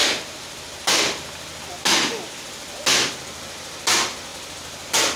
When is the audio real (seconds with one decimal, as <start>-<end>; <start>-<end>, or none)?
0.0-5.2